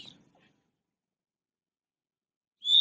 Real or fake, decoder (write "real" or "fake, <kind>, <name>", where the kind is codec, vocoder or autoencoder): real